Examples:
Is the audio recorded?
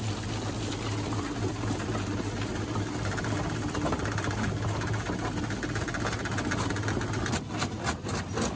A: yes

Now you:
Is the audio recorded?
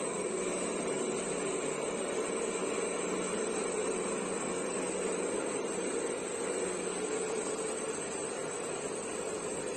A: yes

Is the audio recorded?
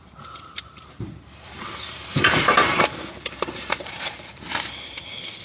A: no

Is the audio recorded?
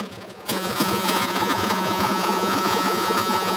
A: no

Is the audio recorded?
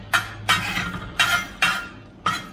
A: yes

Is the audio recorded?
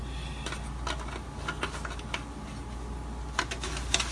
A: yes